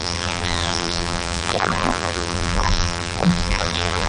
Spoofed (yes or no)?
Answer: yes